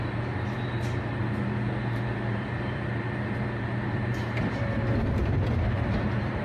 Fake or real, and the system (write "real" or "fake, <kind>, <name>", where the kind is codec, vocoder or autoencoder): fake, vocoder, BigVGAN v2